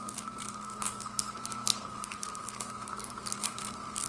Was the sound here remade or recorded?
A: remade